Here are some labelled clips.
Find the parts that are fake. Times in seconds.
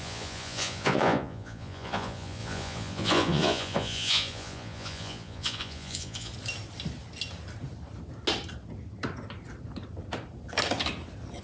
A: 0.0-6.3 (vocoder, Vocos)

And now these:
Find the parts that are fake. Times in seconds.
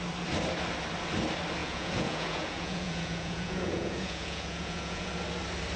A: 1.6-5.1 (vocoder, Vocos)